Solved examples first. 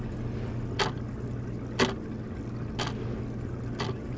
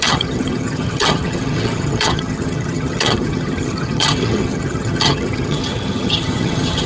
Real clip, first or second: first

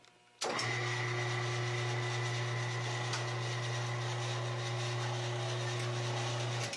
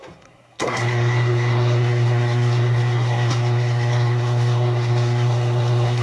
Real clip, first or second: first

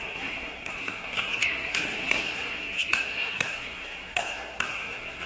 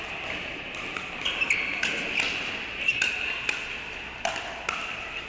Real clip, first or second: second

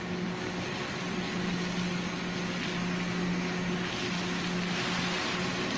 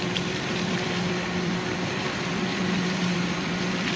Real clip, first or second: first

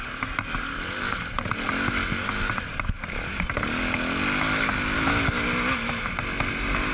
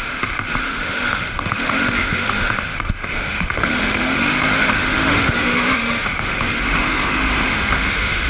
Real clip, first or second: first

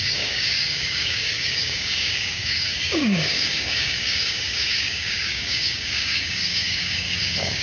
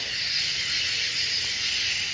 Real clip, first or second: second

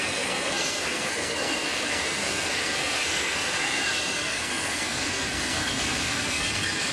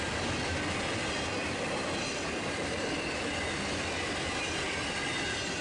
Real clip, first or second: second